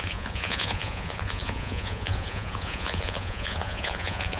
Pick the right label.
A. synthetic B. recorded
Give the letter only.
A